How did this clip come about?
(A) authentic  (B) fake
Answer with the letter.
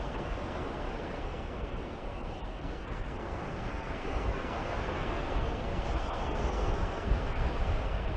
B